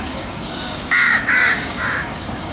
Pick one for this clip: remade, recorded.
remade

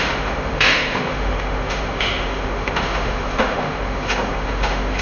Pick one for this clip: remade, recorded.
remade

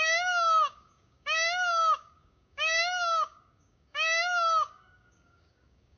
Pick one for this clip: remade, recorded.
remade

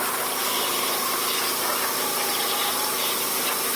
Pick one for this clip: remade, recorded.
recorded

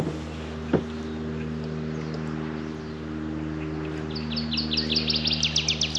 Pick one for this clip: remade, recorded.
recorded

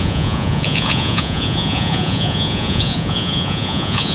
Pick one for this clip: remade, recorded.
remade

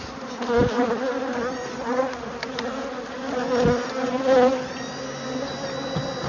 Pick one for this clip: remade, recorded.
recorded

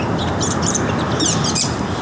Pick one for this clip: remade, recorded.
remade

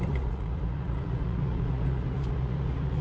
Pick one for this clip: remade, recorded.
remade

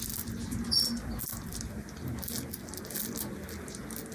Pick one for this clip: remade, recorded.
recorded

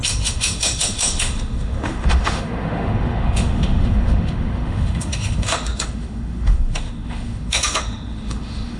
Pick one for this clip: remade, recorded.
remade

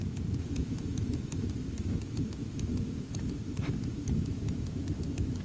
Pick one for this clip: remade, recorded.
remade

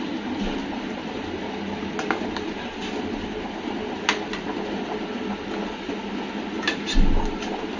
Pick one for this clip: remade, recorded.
recorded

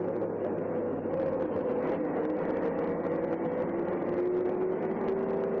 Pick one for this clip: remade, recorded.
recorded